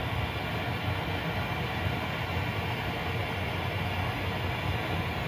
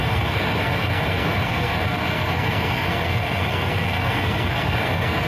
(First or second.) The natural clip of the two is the first